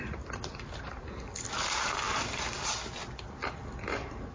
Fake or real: real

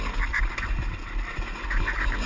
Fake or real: real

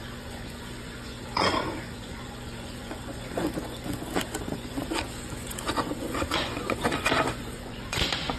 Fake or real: fake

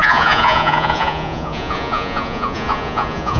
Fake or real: fake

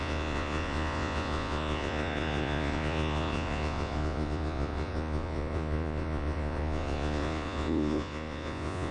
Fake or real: fake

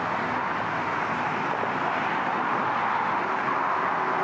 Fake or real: real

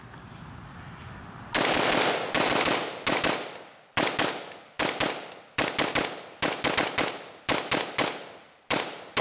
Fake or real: real